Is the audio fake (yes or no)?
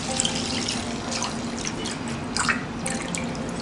no